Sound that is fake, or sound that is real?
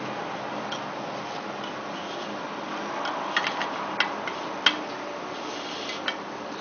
real